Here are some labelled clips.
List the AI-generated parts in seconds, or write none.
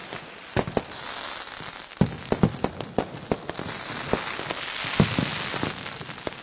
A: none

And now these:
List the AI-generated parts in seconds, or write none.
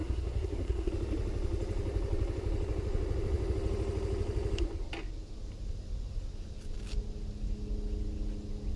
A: 0.0-0.9